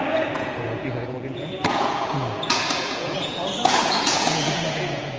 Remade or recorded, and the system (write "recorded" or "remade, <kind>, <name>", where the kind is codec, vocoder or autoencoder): remade, vocoder, Vocos